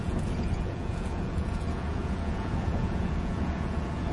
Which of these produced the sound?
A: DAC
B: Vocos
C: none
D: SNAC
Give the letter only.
B